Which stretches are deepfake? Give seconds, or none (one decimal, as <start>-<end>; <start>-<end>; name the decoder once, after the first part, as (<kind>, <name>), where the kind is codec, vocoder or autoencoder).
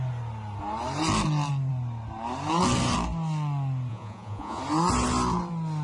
3.9-4.6 (vocoder, Vocos)